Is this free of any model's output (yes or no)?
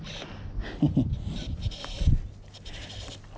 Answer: yes